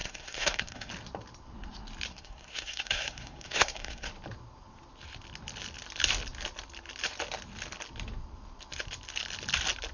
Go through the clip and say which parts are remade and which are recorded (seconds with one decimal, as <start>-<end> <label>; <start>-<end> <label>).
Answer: 0.0-0.9 remade; 0.9-2.1 recorded; 2.1-4.1 remade; 4.1-9.9 recorded